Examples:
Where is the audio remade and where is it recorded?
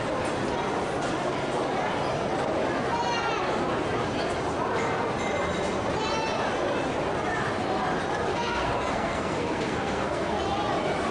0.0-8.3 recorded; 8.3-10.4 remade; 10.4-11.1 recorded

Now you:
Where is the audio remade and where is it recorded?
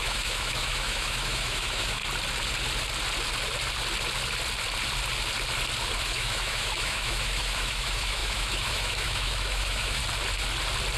0.0-2.0 remade; 2.0-6.0 recorded; 6.0-10.0 remade; 10.0-11.0 recorded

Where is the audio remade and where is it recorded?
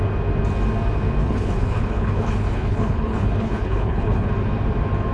0.0-1.2 recorded; 1.2-4.3 remade; 4.3-5.1 recorded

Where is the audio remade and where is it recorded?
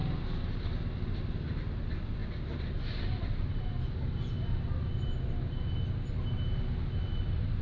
0.0-7.6 recorded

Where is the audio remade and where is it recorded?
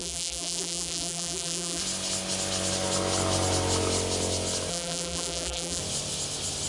0.0-1.8 remade; 1.8-4.7 recorded; 4.7-5.8 remade; 5.8-6.7 recorded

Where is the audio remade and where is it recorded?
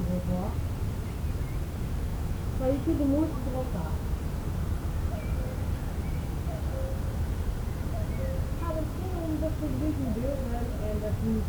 0.0-2.1 recorded; 2.1-4.1 remade; 4.1-11.5 recorded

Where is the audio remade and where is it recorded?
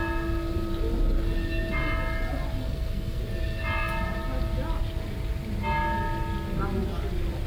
0.0-2.6 recorded; 2.6-3.2 remade; 3.2-7.5 recorded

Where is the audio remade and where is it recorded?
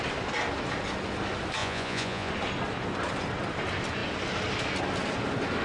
0.0-1.6 recorded; 1.6-2.3 remade; 2.3-5.6 recorded